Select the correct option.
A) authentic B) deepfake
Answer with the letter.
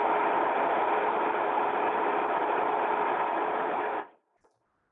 B